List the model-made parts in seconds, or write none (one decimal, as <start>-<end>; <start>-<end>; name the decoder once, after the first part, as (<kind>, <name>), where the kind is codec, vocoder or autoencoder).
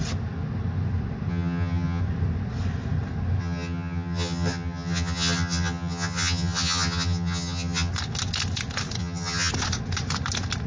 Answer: 1.3-2.0 (vocoder, HiFi-GAN); 3.4-7.9; 9.0-9.5